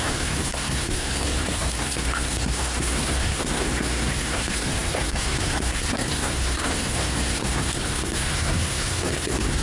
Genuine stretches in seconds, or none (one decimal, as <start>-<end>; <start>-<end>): none